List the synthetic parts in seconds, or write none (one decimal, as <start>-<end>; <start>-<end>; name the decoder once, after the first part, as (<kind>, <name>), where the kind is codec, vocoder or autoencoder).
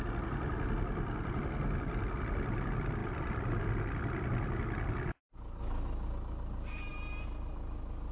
none